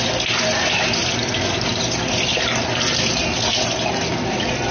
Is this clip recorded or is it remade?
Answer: recorded